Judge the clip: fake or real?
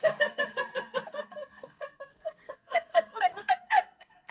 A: fake